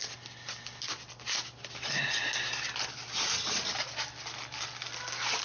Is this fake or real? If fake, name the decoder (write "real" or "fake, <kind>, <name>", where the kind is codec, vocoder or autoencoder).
fake, vocoder, BigVGAN v2